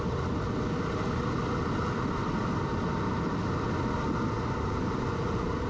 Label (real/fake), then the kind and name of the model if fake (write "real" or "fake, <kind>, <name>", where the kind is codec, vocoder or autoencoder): real